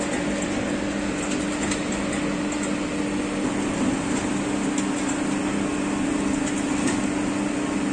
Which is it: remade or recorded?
recorded